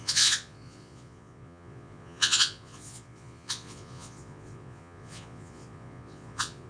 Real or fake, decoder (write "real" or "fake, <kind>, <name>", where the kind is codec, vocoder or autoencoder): fake, vocoder, Vocos